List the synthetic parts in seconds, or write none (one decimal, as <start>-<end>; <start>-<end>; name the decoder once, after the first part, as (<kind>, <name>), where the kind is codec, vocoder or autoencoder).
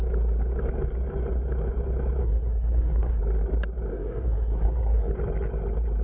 2.2-3.2 (codec, SNAC); 3.9-5.1